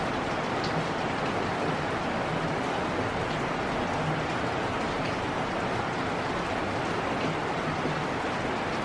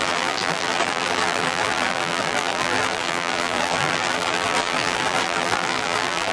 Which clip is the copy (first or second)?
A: second